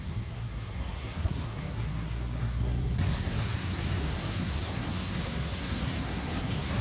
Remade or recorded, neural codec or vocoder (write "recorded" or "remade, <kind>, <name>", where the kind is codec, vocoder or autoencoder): remade, codec, SNAC